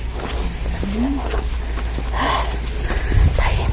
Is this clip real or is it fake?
real